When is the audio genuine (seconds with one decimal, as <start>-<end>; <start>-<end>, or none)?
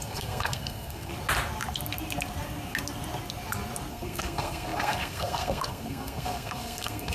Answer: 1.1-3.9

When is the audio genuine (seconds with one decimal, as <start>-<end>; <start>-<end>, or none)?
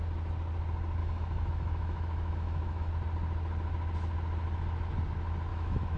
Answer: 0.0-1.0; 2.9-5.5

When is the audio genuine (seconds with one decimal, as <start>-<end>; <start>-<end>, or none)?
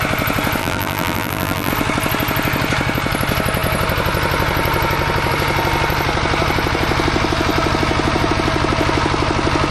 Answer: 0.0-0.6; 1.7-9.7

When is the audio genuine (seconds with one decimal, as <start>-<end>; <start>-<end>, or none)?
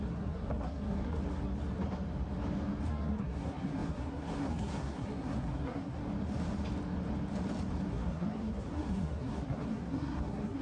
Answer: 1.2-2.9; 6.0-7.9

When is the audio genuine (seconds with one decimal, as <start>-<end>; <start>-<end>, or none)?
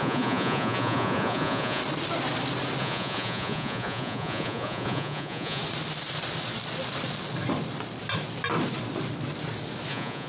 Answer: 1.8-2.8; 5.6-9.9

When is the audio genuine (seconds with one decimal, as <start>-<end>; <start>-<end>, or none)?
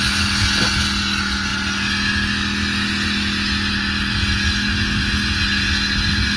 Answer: 0.0-6.4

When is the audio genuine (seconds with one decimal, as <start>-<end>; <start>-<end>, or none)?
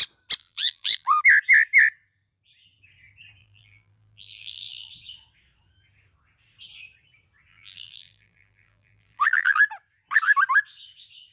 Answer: 0.0-0.4; 1.2-3.4; 4.9-7.5; 9.6-11.3